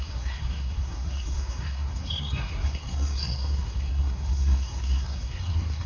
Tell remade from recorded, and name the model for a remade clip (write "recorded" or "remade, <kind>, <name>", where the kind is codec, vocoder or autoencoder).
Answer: remade, codec, SNAC